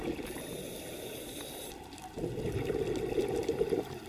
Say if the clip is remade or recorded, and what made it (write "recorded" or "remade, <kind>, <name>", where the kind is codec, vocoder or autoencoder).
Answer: recorded